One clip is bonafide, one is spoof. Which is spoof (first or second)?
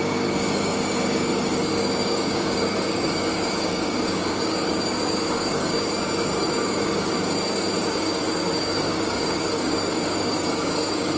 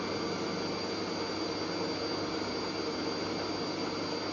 first